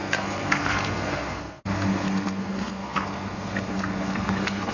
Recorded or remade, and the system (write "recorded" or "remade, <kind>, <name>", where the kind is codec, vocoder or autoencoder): remade, codec, SNAC